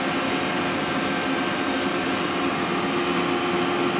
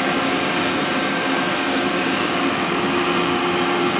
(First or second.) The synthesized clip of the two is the second